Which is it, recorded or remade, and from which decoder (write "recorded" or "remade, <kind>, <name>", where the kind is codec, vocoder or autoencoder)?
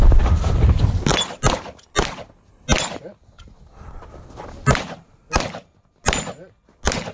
recorded